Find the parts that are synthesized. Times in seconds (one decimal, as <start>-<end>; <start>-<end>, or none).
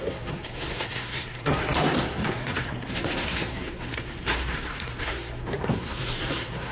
0.0-6.7